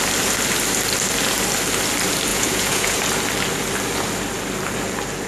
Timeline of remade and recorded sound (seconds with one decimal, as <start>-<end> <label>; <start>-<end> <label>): 0.0-2.3 recorded; 2.3-3.0 remade; 3.0-5.3 recorded